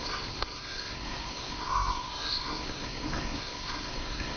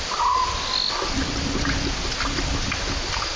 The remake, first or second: first